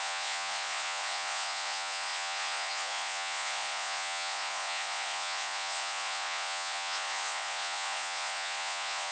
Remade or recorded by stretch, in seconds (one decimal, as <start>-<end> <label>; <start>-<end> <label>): 0.0-9.1 remade